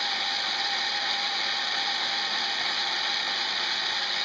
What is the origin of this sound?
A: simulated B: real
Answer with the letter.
B